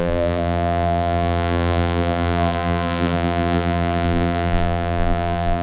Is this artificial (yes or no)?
yes